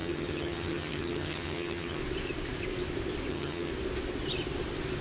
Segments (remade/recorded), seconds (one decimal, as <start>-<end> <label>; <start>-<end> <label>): 0.0-2.0 remade; 2.0-3.3 recorded; 3.3-3.7 remade; 3.7-5.0 recorded